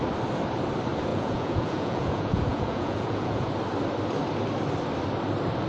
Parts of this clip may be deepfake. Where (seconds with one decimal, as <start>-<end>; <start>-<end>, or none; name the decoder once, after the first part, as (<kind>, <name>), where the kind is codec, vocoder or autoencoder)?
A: 1.1-3.5 (vocoder, Vocos)